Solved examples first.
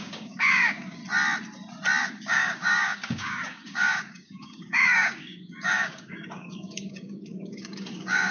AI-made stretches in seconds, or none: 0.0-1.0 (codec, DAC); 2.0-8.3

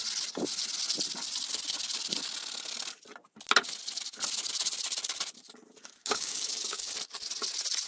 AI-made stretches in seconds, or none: 6.0-6.9 (codec, DAC)

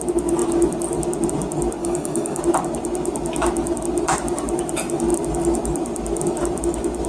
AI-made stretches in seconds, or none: 1.8-2.4 (codec, DAC)

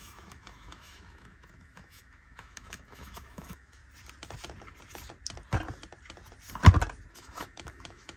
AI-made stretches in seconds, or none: 0.0-3.8 (autoencoder, DAC-VAE); 7.1-8.2

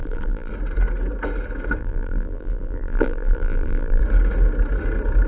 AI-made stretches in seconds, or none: 0.0-0.5 (vocoder, BigVGAN v2); 1.8-4.0

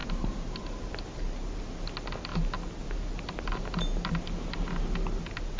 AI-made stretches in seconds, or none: none

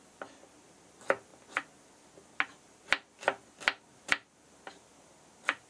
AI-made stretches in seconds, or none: none

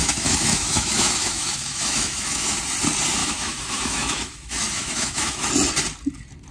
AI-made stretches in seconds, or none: 0.0-2.6 (autoencoder, DAC-VAE); 3.2-5.5